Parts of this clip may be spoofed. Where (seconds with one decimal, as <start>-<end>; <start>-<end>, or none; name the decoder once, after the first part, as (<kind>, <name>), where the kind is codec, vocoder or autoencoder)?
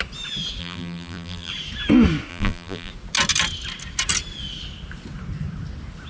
0.6-1.5 (vocoder, BigVGAN v2); 2.3-2.9